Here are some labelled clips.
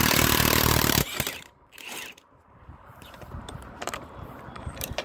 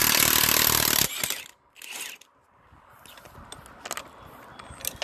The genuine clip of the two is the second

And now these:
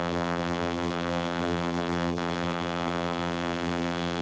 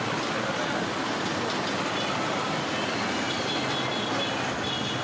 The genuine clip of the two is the second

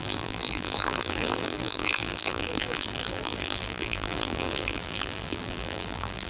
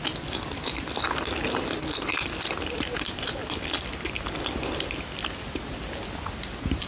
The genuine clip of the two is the second